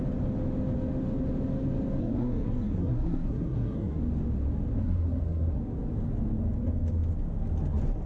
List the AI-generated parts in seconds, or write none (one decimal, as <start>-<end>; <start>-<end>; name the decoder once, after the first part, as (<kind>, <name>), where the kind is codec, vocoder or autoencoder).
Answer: 2.0-4.0 (codec, SNAC); 4.8-5.6